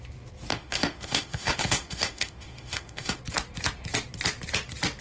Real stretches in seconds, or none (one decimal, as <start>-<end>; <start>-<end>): 0.0-0.5; 3.2-5.0